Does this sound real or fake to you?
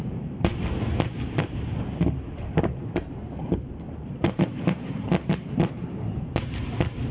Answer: fake